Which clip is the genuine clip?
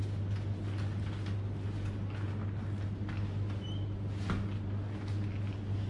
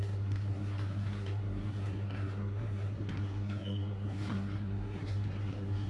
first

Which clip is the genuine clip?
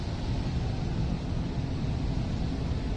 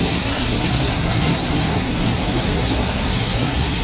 first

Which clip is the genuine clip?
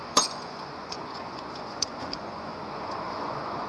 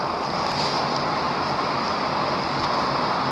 second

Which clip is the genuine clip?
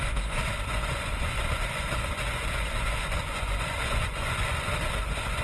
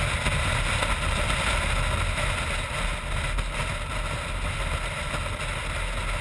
second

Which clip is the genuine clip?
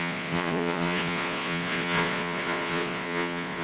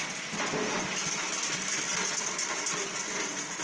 second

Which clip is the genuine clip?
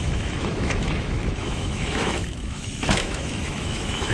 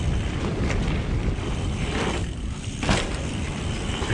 second